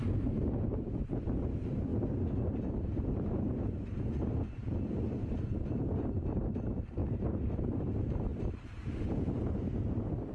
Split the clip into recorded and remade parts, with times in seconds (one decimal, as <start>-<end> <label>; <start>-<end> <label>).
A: 0.0-1.9 remade; 1.9-2.4 recorded; 2.4-10.3 remade